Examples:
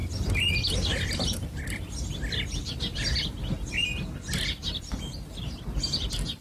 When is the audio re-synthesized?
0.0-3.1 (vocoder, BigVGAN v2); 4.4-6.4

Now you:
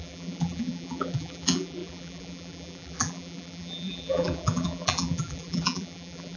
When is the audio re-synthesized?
0.0-6.4 (vocoder, BigVGAN v2)

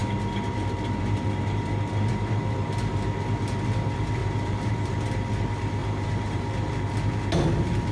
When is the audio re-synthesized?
4.2-4.7 (vocoder, BigVGAN v2); 5.8-6.7

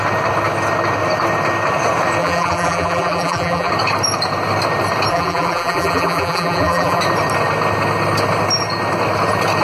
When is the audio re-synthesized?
2.2-3.7 (vocoder, BigVGAN v2); 5.1-7.0

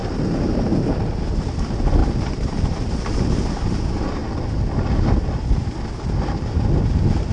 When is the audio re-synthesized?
2.0-3.1 (vocoder, BigVGAN v2)

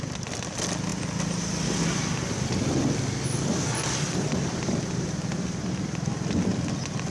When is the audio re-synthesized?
none

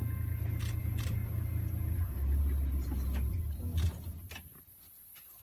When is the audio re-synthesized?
3.7-4.3 (vocoder, BigVGAN v2)

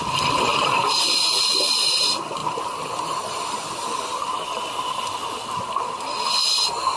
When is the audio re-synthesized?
0.5-1.1 (vocoder, BigVGAN v2); 2.4-3.5